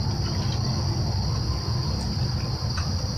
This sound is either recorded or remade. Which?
recorded